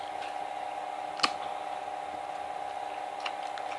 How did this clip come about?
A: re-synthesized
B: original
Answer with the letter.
B